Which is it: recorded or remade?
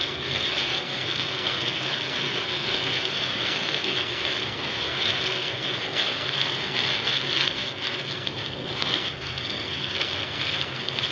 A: remade